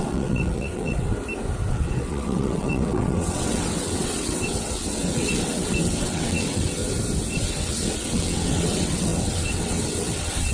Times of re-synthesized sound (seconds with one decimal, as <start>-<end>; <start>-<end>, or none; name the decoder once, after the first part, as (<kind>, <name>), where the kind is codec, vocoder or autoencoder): 0.0-1.1 (vocoder, WaveNeXt); 1.7-6.8; 7.3-10.5